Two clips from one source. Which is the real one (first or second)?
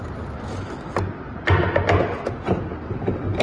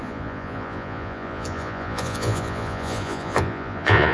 first